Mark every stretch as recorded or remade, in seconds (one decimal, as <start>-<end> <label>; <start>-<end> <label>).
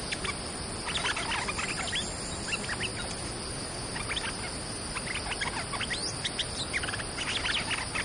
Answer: 0.0-8.0 recorded